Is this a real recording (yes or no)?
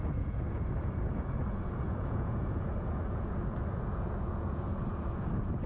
no